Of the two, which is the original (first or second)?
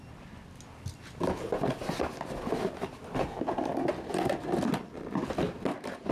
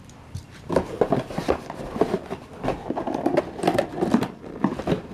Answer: first